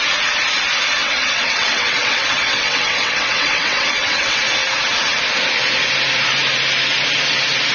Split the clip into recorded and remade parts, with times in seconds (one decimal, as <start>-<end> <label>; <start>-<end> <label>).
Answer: 0.0-1.0 recorded; 1.0-4.4 remade; 4.4-7.7 recorded